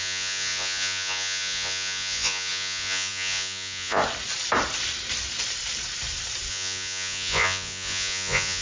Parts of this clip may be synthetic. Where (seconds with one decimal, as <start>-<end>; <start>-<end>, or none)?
0.0-4.0; 6.5-8.6